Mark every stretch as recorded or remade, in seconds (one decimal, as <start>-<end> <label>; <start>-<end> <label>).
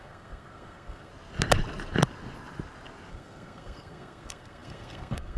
0.0-1.1 remade; 1.1-3.1 recorded; 3.1-5.4 remade